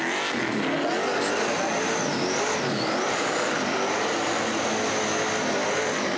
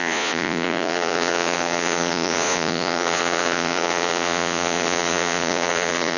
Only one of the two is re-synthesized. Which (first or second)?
second